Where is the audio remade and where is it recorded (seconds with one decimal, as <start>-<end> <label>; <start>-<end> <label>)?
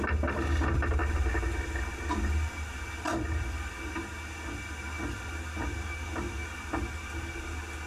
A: 0.0-7.9 recorded